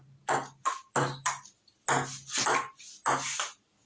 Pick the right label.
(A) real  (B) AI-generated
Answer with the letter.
A